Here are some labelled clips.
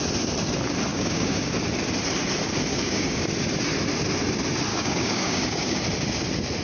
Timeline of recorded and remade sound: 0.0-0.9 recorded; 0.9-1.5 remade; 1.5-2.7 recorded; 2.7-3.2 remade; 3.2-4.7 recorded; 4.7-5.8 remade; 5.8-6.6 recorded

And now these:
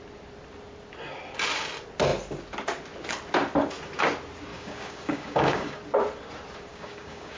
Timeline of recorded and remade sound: 0.0-4.5 recorded; 4.5-5.8 remade; 5.8-6.7 recorded; 6.7-7.4 remade

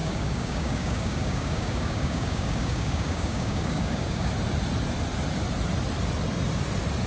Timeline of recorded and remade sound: 0.0-4.3 remade; 4.3-7.1 recorded

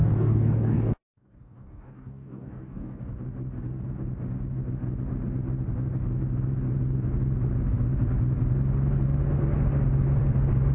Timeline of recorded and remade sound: 0.0-3.0 remade; 3.0-10.7 recorded

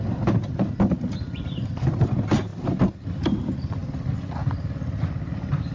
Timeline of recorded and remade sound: 0.0-5.7 recorded

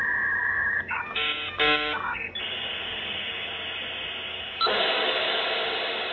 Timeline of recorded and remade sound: 0.0-0.4 recorded; 0.4-3.5 remade; 3.5-4.3 recorded; 4.3-5.4 remade; 5.4-6.1 recorded

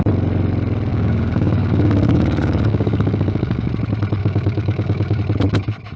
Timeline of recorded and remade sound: 0.0-0.9 recorded; 0.9-3.7 remade; 3.7-4.2 recorded; 4.2-5.2 remade; 5.2-6.0 recorded

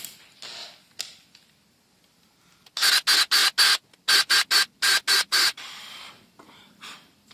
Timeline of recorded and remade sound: 0.0-7.3 recorded